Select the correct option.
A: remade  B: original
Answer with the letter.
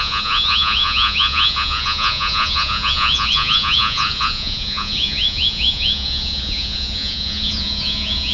A